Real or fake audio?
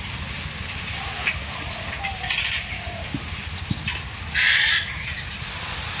real